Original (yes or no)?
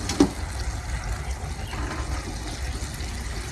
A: yes